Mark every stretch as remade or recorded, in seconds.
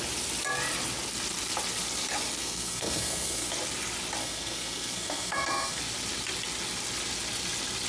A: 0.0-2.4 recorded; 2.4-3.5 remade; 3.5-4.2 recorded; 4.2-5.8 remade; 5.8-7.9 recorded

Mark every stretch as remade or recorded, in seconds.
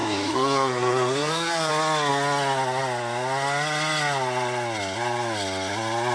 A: 0.0-1.7 remade; 1.7-6.1 recorded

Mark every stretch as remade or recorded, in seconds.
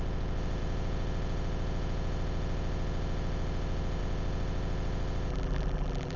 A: 0.0-5.3 recorded; 5.3-6.2 remade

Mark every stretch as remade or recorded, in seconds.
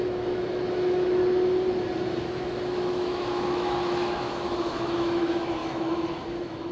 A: 0.0-1.2 remade; 1.2-2.2 recorded; 2.2-6.7 remade